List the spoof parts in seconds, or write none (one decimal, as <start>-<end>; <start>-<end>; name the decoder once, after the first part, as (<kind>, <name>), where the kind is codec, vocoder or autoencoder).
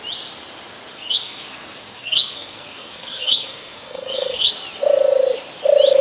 0.9-4.5 (codec, SNAC)